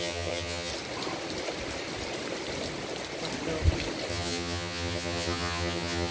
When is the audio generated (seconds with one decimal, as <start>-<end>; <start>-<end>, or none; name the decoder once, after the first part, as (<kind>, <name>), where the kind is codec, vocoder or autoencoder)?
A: 0.0-0.7 (vocoder, HiFi-GAN); 4.1-6.1